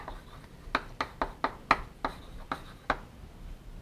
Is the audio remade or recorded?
recorded